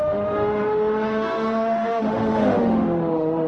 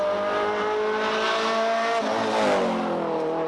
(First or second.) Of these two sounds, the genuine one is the second